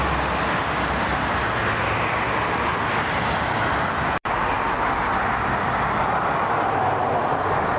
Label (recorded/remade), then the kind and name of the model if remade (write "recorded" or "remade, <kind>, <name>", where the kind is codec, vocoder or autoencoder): recorded